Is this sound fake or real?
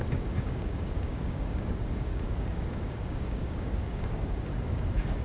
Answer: fake